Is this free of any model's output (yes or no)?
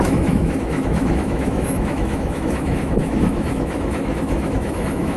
no